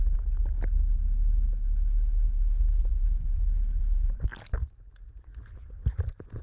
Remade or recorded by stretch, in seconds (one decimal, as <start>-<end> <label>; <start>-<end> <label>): 0.0-2.8 recorded; 2.8-4.6 remade; 4.6-6.4 recorded